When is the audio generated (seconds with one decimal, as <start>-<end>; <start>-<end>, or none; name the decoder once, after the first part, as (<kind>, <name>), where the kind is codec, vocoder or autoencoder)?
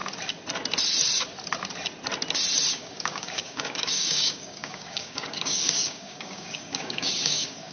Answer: 2.7-7.7 (codec, DAC)